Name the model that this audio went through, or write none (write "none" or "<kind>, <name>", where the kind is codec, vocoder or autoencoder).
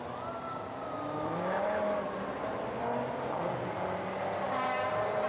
none